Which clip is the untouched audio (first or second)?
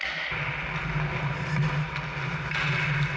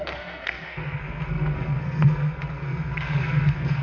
first